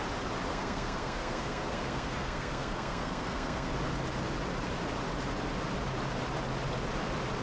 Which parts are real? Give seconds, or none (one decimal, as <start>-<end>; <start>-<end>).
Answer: 0.0-0.5; 3.7-7.4